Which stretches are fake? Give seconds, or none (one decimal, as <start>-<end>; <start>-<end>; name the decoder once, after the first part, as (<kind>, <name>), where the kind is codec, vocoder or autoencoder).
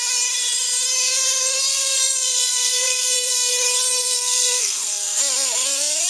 1.7-3.5 (codec, SNAC); 4.0-5.2